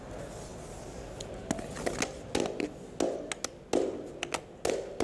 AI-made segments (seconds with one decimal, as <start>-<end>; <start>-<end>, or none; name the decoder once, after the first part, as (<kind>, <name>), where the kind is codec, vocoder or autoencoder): none